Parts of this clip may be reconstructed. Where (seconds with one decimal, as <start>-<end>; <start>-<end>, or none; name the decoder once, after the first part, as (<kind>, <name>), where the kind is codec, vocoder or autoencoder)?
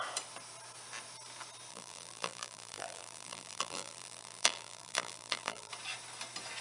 1.7-5.7 (vocoder, BigVGAN v2)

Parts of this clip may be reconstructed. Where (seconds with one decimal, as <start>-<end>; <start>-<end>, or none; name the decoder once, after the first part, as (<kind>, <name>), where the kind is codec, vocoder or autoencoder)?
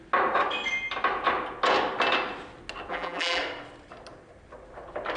2.9-3.4 (vocoder, BigVGAN v2)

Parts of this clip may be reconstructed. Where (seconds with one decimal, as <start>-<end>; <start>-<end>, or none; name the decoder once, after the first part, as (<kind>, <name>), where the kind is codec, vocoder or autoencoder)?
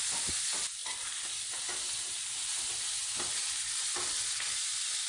none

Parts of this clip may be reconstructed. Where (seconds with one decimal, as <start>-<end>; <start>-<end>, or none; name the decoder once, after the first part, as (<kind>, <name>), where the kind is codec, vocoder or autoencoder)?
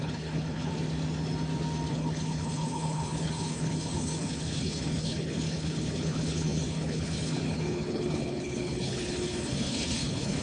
0.0-0.7 (codec, HILCodec); 1.9-10.4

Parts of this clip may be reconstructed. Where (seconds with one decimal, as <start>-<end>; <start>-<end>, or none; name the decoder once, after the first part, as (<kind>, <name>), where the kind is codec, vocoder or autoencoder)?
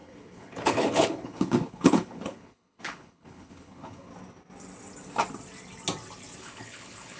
0.0-4.1 (codec, HILCodec); 6.4-7.2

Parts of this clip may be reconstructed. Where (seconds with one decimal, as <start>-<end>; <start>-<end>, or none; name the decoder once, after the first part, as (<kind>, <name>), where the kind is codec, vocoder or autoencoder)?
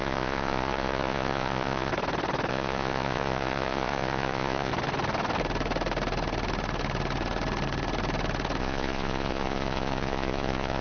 0.0-1.9 (vocoder, Vocos); 2.5-4.7; 8.6-10.8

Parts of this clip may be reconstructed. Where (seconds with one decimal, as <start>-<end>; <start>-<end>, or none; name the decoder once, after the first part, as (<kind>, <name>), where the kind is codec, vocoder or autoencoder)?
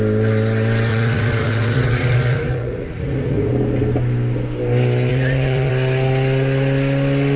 0.9-3.5 (vocoder, Vocos); 5.1-5.7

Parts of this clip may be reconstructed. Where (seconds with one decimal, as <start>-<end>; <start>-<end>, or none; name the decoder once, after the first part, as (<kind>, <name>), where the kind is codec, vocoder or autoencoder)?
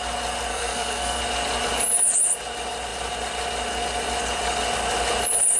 0.5-1.2 (codec, SNAC)